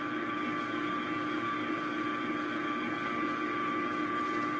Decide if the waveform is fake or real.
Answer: real